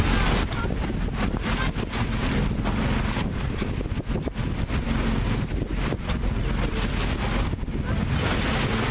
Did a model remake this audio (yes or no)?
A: no